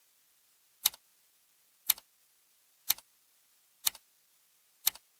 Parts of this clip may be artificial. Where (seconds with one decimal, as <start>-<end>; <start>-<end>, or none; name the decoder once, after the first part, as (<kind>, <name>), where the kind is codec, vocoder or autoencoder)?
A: none